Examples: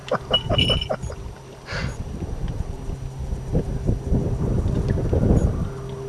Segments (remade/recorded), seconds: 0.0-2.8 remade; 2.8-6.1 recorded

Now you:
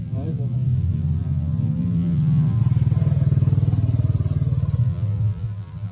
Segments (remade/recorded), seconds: 0.0-2.6 remade; 2.6-4.8 recorded; 4.8-5.9 remade

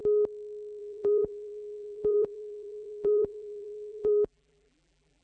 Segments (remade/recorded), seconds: 0.0-0.8 recorded; 0.8-5.2 remade

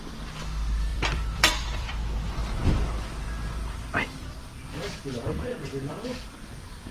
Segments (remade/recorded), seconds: 0.0-2.4 remade; 2.4-4.0 recorded; 4.0-6.9 remade

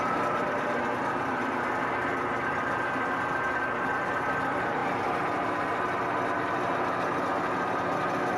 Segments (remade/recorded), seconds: 0.0-8.4 recorded

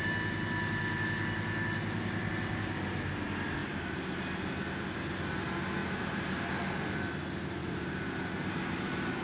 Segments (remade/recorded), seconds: 0.0-3.6 recorded; 3.6-4.2 remade; 4.2-5.8 recorded; 5.8-6.5 remade; 6.5-7.6 recorded; 7.6-9.2 remade

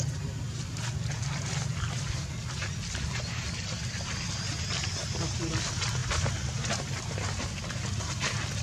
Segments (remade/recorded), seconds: 0.0-8.6 recorded